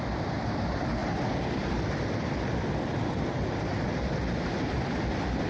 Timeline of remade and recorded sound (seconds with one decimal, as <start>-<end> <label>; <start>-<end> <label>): 0.0-5.5 remade